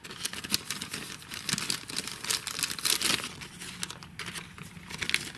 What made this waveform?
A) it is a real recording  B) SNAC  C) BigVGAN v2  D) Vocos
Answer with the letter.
A